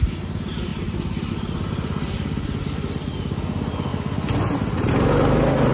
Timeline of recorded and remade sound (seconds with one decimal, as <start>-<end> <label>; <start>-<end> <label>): 0.0-5.7 recorded